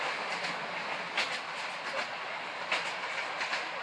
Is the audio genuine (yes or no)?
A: yes